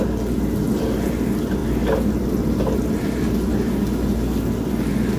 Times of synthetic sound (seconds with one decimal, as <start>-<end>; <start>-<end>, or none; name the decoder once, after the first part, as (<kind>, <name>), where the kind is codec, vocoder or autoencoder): none